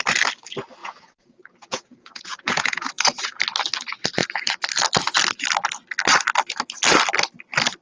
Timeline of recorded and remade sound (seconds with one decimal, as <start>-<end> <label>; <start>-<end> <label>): 0.0-0.8 recorded; 0.8-3.4 remade; 3.4-7.8 recorded